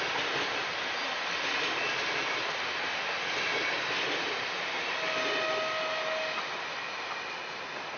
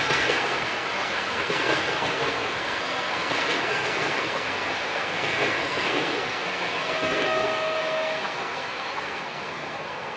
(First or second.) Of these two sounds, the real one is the first